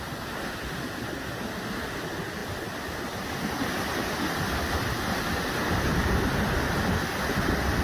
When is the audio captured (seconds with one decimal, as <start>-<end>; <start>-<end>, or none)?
0.0-7.8